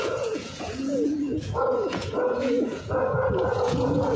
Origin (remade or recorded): remade